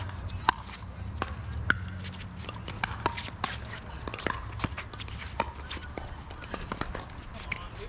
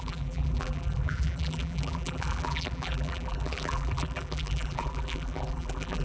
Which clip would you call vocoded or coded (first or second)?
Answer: second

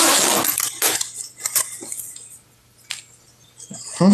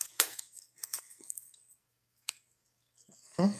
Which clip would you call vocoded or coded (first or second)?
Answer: second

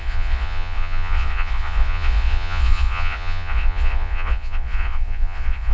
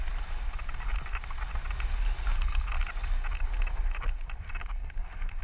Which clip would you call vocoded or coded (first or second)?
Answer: first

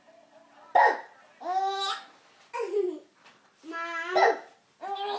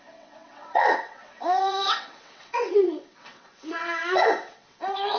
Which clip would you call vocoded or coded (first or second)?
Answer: second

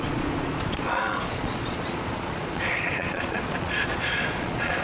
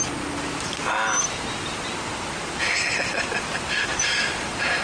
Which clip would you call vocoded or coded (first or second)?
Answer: first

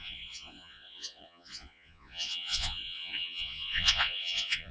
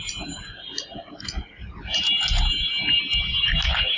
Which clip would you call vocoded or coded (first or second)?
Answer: first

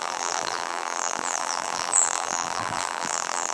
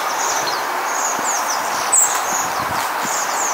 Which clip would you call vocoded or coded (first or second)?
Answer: first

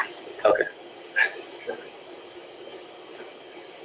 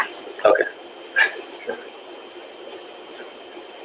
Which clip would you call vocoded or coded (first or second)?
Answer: first